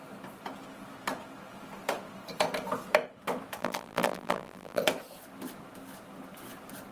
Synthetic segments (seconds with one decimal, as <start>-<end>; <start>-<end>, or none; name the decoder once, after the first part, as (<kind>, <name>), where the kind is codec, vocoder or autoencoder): 3.6-4.8 (vocoder, BigVGAN v2)

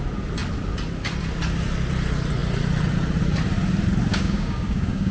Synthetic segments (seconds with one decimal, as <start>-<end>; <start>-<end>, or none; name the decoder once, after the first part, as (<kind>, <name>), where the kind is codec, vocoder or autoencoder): 4.1-5.1 (codec, DAC)